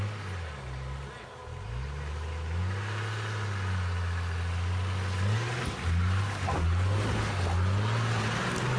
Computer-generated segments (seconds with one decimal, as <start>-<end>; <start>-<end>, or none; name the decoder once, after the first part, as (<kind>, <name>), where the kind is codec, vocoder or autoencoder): none